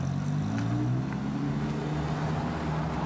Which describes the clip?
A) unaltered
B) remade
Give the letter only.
A